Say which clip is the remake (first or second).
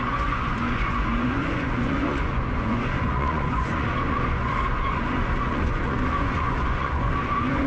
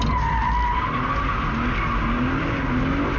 first